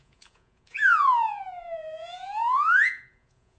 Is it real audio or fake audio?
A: fake